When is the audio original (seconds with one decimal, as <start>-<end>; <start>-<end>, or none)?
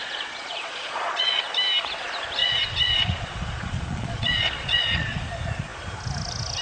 1.4-2.4; 5.2-6.6